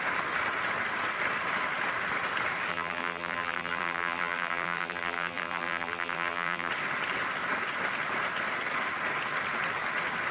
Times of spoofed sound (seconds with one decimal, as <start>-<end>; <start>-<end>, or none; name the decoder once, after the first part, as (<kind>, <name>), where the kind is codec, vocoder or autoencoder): 2.7-6.7 (vocoder, BigVGAN v2)